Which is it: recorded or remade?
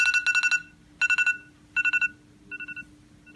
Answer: recorded